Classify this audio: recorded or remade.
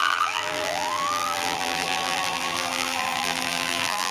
remade